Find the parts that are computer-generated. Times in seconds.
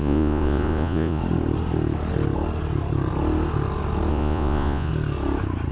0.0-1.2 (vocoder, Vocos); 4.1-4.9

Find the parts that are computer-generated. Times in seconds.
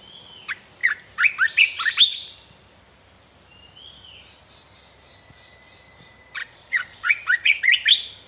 6.4-7.6 (vocoder, Vocos)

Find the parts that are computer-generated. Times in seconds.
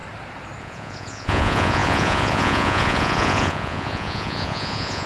0.6-5.1 (vocoder, Vocos)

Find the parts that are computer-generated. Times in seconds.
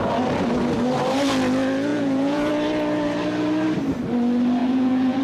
1.9-2.5 (vocoder, Vocos); 4.6-5.2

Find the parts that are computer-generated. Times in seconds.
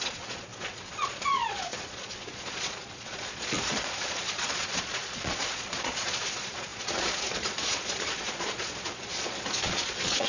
0.0-10.3 (vocoder, Vocos)